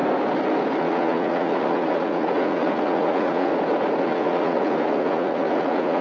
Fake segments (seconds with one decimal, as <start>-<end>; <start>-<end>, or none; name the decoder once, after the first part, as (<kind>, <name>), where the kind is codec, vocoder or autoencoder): 0.8-3.5 (vocoder, Vocos); 4.0-6.0